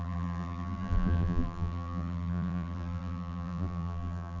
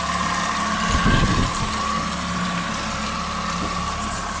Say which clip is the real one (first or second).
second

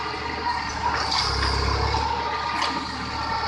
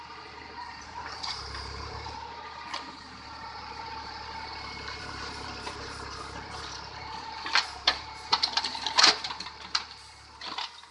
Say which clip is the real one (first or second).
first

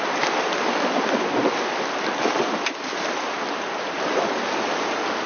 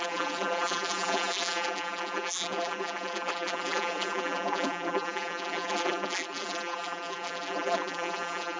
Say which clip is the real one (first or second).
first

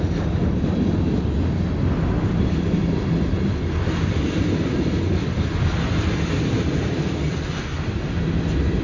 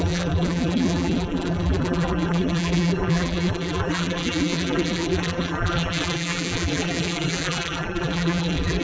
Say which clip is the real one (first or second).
first